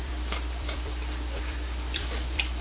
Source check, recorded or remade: remade